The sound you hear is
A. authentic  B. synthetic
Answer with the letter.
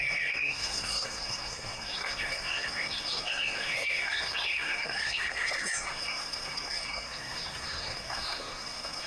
B